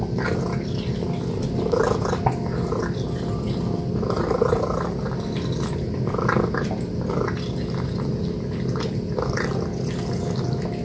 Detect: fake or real real